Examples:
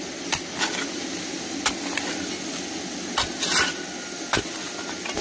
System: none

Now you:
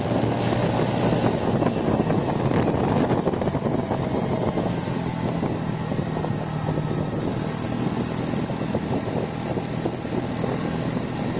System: none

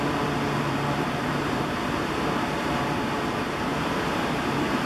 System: vocoder, BigVGAN v2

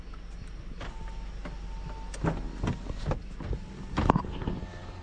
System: none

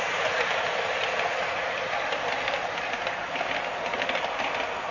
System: none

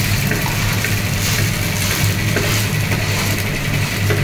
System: none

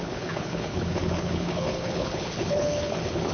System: codec, HILCodec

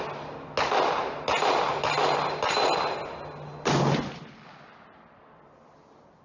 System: none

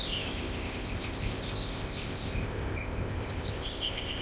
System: codec, ZipCodec